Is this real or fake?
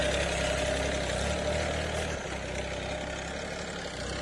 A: real